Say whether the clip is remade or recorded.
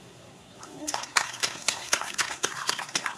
remade